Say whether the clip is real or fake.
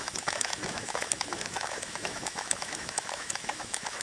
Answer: fake